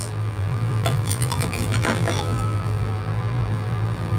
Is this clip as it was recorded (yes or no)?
no